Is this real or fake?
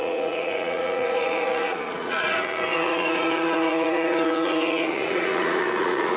fake